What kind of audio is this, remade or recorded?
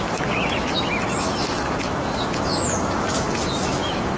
remade